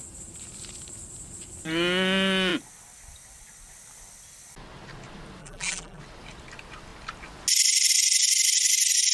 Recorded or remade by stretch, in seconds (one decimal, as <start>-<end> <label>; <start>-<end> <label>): 0.0-5.4 recorded; 5.4-6.0 remade; 6.0-9.1 recorded

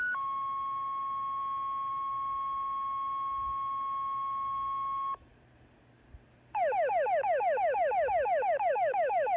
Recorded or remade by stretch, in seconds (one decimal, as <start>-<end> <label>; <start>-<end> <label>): 0.0-1.4 remade; 1.4-1.9 recorded; 1.9-5.3 remade; 5.3-8.7 recorded; 8.7-9.4 remade